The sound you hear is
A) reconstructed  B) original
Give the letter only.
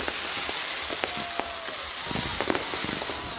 B